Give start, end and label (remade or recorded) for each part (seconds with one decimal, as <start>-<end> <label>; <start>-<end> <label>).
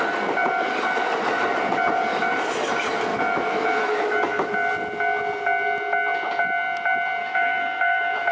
0.0-3.1 recorded; 3.1-4.5 remade; 4.5-7.2 recorded; 7.2-8.3 remade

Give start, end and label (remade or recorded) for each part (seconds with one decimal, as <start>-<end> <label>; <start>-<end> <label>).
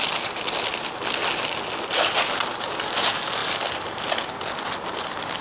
0.0-5.4 recorded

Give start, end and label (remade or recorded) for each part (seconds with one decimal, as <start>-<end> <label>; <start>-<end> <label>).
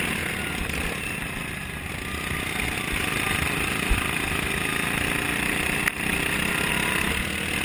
0.0-7.6 recorded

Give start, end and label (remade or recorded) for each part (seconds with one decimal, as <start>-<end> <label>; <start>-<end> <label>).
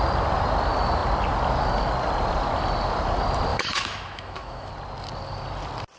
0.0-3.5 recorded; 3.5-4.7 remade; 4.7-6.0 recorded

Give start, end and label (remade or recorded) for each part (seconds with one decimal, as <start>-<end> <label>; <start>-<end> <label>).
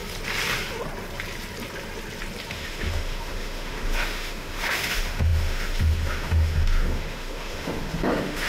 0.0-2.5 recorded; 2.5-8.5 remade